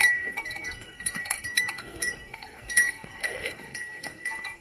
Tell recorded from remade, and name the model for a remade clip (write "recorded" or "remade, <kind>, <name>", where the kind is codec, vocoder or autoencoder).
remade, codec, SNAC